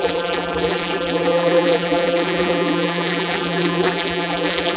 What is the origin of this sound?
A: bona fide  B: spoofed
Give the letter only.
B